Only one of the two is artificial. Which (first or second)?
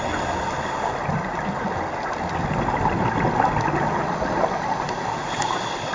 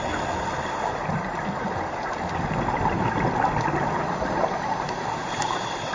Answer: second